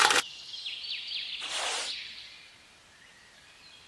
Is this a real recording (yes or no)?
yes